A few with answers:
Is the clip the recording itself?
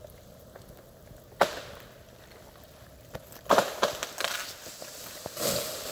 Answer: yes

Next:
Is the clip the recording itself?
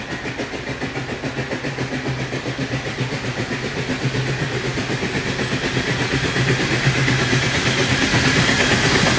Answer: yes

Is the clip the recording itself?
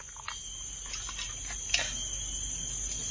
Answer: yes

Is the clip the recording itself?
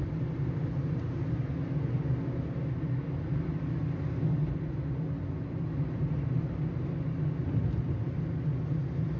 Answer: yes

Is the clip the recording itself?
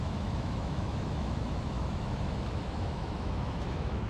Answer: no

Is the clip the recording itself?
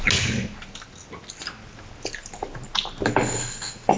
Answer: yes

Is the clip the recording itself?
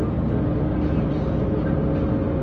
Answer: yes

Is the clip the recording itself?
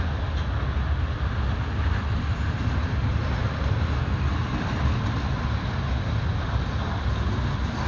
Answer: yes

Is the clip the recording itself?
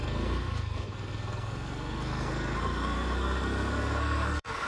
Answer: no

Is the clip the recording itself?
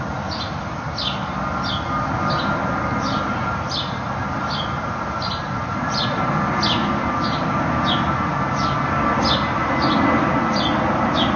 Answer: yes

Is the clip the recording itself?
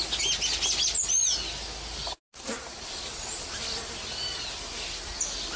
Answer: yes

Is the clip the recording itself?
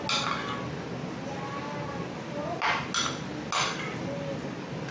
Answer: yes